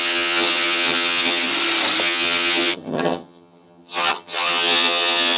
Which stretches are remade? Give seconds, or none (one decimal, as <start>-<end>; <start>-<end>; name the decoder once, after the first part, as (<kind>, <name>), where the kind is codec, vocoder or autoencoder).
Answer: 0.0-1.5 (vocoder, HiFi-GAN); 2.0-5.4